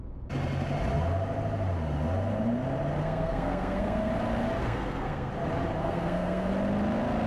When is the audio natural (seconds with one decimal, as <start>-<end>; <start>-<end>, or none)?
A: 0.0-3.0; 4.1-4.6; 5.3-5.8; 6.5-7.3